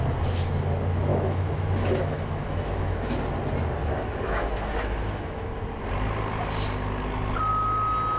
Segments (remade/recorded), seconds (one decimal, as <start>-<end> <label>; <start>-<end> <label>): 0.0-1.1 recorded; 1.1-3.0 remade; 3.0-3.8 recorded; 3.8-5.5 remade; 5.5-8.2 recorded

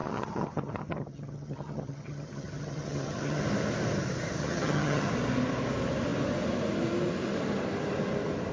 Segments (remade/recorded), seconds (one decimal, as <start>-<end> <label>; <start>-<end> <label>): 0.0-3.4 remade; 3.4-4.4 recorded; 4.4-5.1 remade; 5.1-8.5 recorded

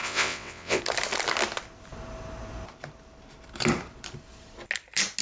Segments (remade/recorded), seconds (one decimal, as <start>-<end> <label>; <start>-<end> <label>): 0.0-0.8 remade; 0.8-5.2 recorded

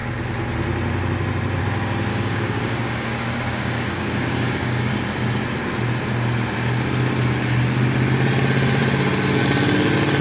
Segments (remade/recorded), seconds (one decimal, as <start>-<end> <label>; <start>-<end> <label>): 0.0-2.1 recorded; 2.1-4.9 remade; 4.9-10.2 recorded

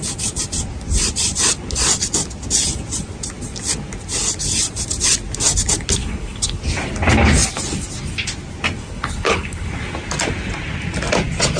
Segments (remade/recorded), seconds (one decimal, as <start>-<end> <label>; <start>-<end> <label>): 0.0-6.0 recorded; 6.0-6.6 remade; 6.6-8.8 recorded; 8.8-9.7 remade; 9.7-11.6 recorded